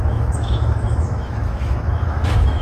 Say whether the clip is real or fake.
fake